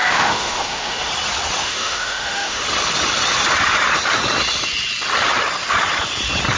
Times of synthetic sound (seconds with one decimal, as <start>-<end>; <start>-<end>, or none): 0.0-1.1; 1.6-2.6